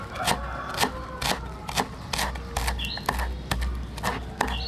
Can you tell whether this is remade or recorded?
recorded